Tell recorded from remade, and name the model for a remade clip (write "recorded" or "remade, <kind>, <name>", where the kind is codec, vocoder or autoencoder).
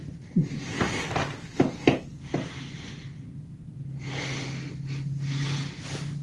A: recorded